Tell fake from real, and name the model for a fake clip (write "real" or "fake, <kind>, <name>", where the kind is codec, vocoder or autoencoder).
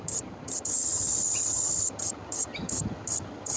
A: fake, vocoder, HiFi-GAN